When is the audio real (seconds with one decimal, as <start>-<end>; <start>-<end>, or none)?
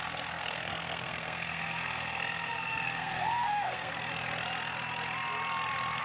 3.9-6.0